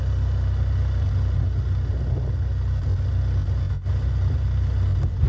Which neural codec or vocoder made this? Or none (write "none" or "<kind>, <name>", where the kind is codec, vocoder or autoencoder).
none